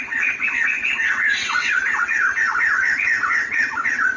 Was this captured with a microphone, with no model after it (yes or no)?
no